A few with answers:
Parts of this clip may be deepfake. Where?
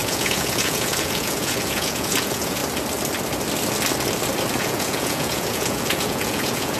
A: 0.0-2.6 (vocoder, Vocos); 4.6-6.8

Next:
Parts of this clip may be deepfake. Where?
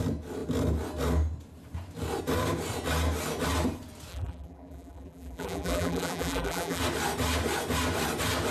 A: 4.1-6.8 (vocoder, BigVGAN v2)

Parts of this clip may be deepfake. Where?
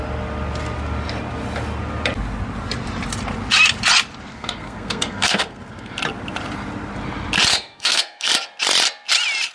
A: 4.3-5.9 (codec, SNAC); 7.5-8.3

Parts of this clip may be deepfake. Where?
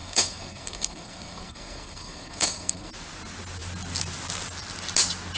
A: 0.0-2.9 (codec, SNAC)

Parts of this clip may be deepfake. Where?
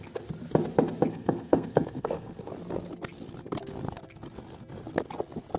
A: 1.1-2.5 (codec, SNAC)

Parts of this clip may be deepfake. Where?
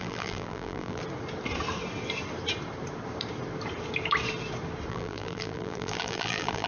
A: 0.0-1.0 (vocoder, BigVGAN v2); 4.9-6.7